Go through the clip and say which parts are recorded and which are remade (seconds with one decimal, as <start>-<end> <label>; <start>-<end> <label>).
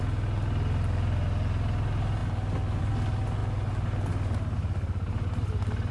0.0-5.9 recorded